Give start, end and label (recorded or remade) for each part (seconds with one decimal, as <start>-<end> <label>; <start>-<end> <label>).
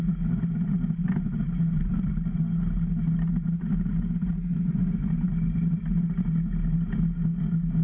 0.0-1.0 recorded; 1.0-2.1 remade; 2.1-4.4 recorded; 4.4-5.2 remade; 5.2-7.8 recorded